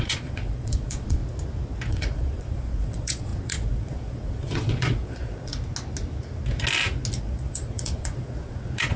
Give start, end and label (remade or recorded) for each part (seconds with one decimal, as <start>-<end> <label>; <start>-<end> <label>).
0.0-1.2 remade; 1.2-1.9 recorded; 1.9-5.5 remade; 5.5-7.2 recorded; 7.2-9.0 remade